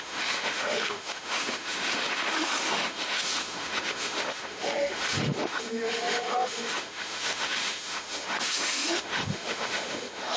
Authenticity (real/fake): fake